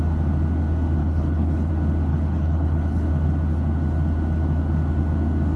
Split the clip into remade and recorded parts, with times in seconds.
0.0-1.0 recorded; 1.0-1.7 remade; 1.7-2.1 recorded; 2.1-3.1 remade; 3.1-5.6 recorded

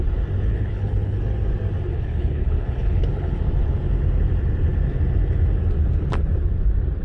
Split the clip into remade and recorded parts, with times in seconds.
0.0-0.5 recorded; 0.5-1.2 remade; 1.2-1.9 recorded; 1.9-3.4 remade; 3.4-7.0 recorded

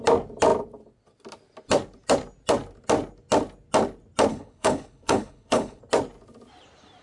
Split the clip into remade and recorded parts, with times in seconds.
0.0-4.3 recorded; 4.3-5.8 remade; 5.8-7.0 recorded